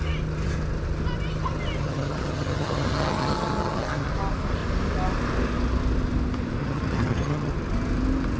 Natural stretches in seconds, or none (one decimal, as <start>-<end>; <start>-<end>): 0.0-1.8; 4.1-6.6; 7.5-8.4